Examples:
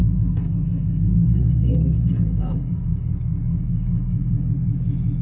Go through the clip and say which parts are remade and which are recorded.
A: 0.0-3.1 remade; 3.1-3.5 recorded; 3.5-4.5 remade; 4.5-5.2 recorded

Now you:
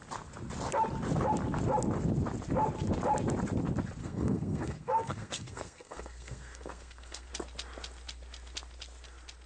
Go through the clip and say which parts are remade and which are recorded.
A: 0.0-4.0 recorded; 4.0-7.3 remade; 7.3-9.5 recorded

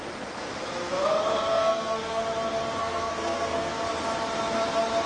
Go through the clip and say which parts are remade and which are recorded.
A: 0.0-1.5 recorded; 1.5-2.2 remade; 2.2-2.8 recorded; 2.8-3.7 remade; 3.7-5.1 recorded

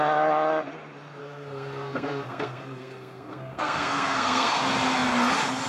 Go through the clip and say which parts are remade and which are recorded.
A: 0.0-1.2 recorded; 1.2-4.6 remade; 4.6-5.7 recorded

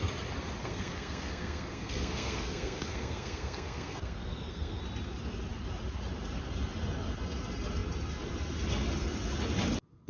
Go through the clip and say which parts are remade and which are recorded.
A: 0.0-0.6 recorded; 0.6-4.8 remade; 4.8-10.1 recorded

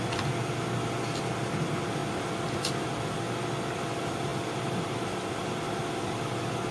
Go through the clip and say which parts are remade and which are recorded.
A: 0.0-6.7 recorded